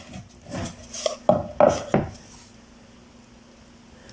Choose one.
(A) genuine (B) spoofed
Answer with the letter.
A